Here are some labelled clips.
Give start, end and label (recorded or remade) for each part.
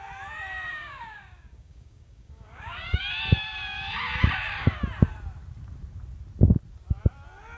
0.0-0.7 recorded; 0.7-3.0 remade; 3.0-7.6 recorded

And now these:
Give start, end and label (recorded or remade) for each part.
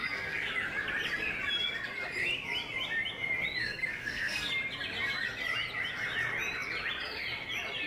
0.0-0.5 remade; 0.5-3.6 recorded; 3.6-4.5 remade; 4.5-7.9 recorded